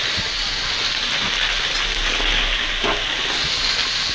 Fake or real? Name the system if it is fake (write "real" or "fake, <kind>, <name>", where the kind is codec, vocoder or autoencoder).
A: real